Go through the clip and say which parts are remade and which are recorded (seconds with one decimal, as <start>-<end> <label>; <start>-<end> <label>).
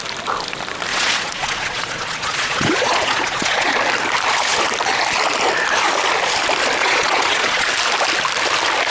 0.0-0.9 recorded; 0.9-3.8 remade; 3.8-6.8 recorded; 6.8-7.7 remade; 7.7-8.9 recorded